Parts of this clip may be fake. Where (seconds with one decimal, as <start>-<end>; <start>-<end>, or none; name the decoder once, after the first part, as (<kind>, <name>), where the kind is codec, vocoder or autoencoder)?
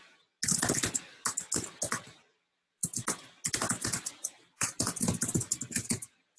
none